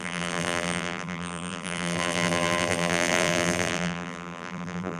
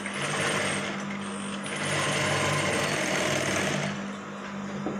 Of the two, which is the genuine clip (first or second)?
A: second